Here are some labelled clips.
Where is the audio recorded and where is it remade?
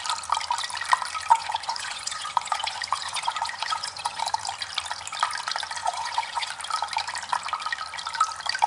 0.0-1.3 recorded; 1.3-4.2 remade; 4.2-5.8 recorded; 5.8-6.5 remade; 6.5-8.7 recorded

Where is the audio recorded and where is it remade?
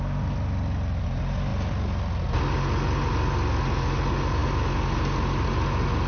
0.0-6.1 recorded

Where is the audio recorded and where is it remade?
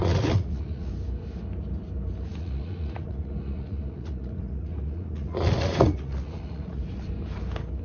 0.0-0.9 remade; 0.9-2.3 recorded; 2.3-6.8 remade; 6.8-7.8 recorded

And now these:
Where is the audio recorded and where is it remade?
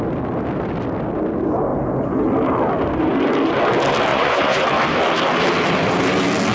0.0-4.1 recorded; 4.1-4.6 remade; 4.6-6.5 recorded